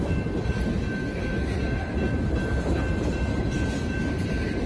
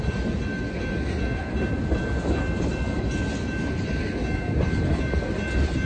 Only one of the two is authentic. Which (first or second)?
second